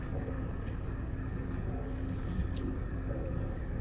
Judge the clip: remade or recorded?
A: remade